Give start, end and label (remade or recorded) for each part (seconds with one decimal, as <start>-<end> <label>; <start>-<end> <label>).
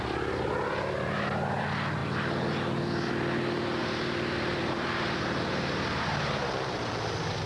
0.0-3.8 recorded; 3.8-6.9 remade; 6.9-7.5 recorded